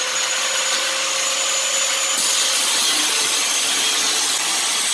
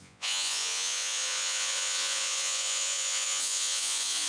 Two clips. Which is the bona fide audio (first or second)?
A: first